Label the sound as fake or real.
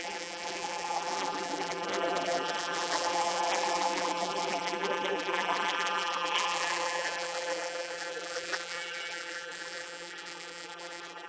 fake